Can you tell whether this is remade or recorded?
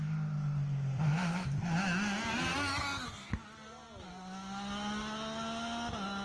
recorded